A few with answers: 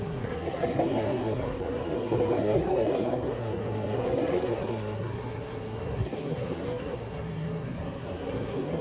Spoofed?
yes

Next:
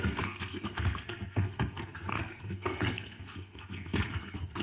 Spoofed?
yes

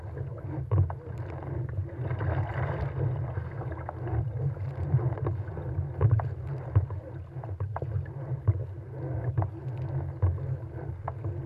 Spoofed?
no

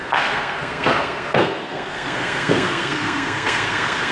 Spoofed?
yes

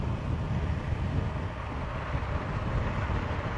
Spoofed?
no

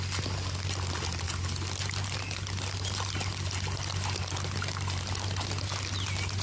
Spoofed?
no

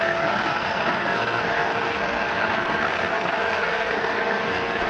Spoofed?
yes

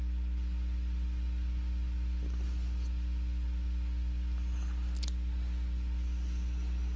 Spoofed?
no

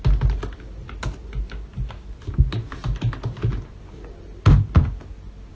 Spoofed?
no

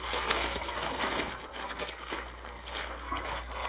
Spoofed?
yes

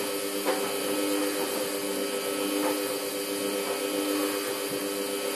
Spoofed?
no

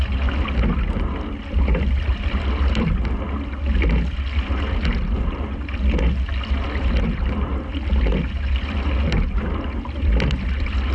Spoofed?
no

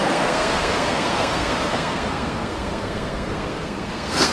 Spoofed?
yes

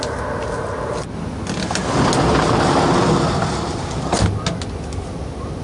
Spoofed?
no